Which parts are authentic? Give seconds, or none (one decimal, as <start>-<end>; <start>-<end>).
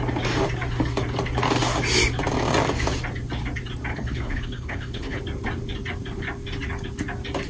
0.0-3.9; 5.2-7.5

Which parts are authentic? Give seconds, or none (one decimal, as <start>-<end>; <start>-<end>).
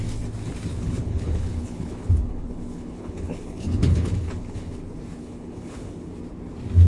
0.0-0.7; 4.8-5.2; 6.1-6.9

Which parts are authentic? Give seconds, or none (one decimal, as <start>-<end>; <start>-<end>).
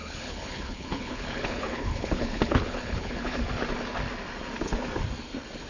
3.4-5.7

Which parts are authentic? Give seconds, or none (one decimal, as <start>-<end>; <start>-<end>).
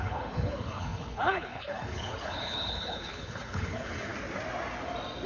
4.1-5.3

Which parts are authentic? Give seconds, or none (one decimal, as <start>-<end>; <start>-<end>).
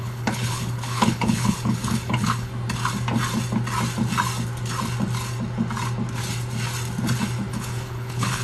2.5-7.5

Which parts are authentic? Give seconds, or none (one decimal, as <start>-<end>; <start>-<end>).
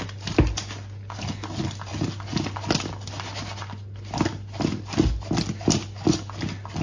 0.0-6.8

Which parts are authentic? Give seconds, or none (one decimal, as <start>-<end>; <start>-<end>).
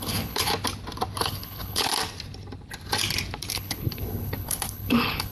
0.5-1.2; 1.9-3.5